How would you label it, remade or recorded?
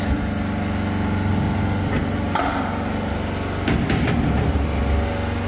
recorded